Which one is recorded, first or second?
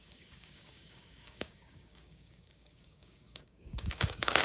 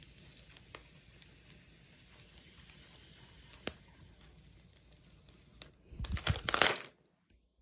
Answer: second